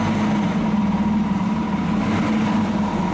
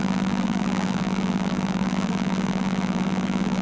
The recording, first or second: first